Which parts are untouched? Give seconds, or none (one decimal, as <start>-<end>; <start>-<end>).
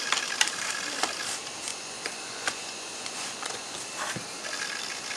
0.0-1.7; 3.7-5.2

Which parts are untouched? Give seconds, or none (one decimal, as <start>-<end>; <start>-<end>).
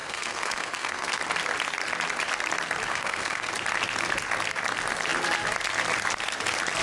1.2-2.9; 3.5-6.8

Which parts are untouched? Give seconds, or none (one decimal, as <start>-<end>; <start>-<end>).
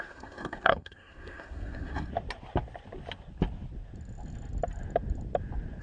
2.1-5.8